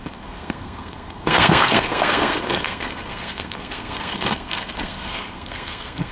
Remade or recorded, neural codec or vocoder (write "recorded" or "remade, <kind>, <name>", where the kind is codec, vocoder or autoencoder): remade, codec, SNAC